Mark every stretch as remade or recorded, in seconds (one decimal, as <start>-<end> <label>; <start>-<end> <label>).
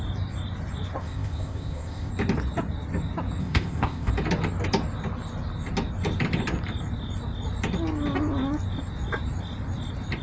0.0-1.0 recorded; 1.0-2.1 remade; 2.1-3.4 recorded; 3.4-4.1 remade; 4.1-10.2 recorded